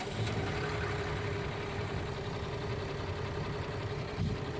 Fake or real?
real